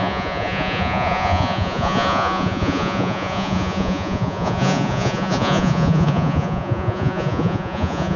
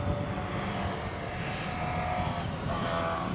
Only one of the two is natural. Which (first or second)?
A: second